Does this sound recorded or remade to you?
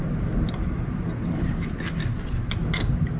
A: recorded